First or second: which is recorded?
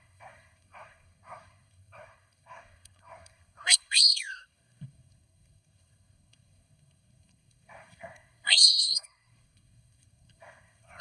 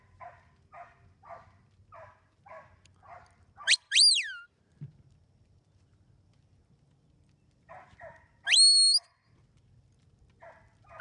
second